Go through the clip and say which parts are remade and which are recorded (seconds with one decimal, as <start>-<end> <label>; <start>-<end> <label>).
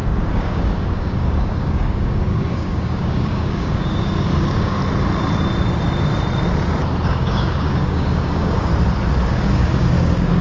0.0-4.8 remade; 4.8-7.1 recorded; 7.1-8.7 remade; 8.7-9.3 recorded; 9.3-10.4 remade